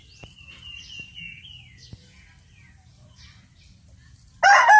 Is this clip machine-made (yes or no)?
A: no